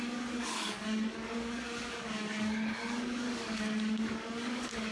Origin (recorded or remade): remade